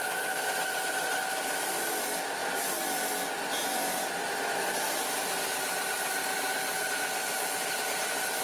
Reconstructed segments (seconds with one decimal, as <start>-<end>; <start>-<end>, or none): none